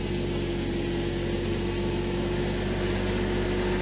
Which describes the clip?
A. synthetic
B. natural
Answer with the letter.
B